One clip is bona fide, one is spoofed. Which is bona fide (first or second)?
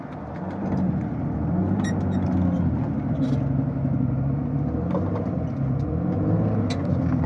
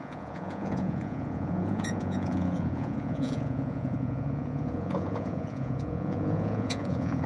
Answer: first